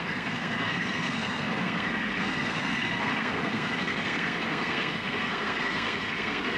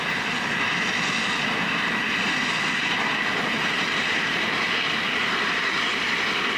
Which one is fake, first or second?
first